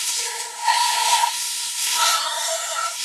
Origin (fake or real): fake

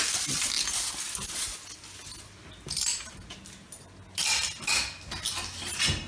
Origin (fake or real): real